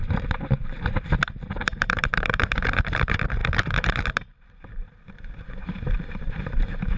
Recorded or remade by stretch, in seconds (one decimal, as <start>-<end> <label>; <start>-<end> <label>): 0.0-7.0 remade